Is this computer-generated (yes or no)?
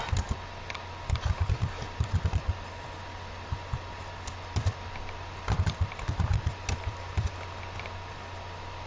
no